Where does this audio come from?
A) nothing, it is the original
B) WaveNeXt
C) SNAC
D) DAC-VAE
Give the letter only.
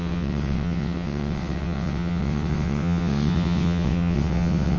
B